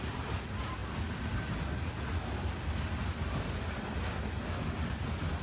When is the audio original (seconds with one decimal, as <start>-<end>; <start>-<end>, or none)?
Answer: 0.0-5.4